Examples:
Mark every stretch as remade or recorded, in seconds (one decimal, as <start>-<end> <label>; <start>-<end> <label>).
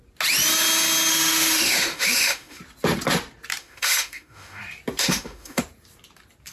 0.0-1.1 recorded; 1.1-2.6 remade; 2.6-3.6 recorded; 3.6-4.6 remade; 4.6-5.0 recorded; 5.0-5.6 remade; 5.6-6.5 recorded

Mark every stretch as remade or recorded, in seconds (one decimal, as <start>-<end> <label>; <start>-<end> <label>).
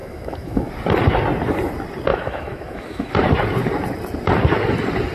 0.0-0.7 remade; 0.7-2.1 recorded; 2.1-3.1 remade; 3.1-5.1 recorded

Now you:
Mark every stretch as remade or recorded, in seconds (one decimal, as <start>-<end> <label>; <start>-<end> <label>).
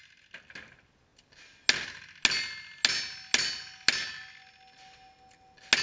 0.0-5.8 recorded